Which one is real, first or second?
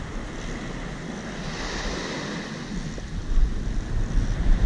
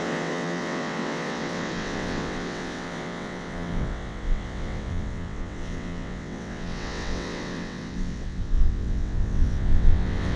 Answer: first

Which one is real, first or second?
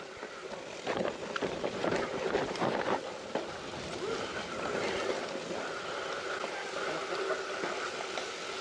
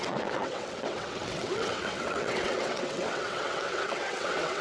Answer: first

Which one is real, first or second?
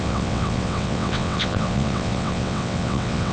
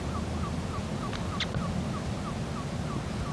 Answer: second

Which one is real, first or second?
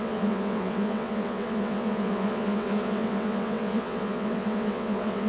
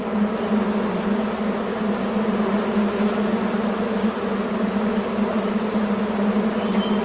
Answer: second